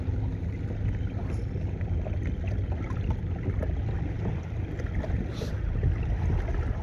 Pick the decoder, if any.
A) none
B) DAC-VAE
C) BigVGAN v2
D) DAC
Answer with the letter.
A